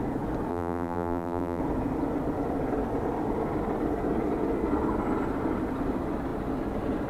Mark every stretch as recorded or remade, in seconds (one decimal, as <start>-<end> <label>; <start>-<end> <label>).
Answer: 0.0-0.5 recorded; 0.5-1.6 remade; 1.6-7.1 recorded